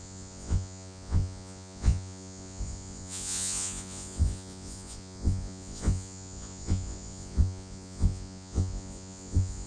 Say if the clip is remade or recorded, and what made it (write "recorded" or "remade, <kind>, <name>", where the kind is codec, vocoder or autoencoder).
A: remade, vocoder, Vocos